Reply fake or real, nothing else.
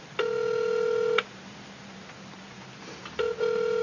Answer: real